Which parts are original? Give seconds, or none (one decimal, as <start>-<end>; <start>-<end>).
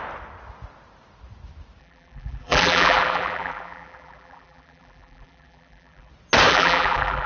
0.0-1.8; 6.1-6.5